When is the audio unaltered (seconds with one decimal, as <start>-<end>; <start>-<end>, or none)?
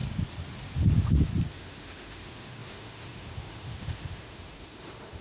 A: 0.0-1.5